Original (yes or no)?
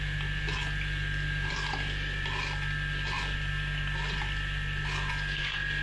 yes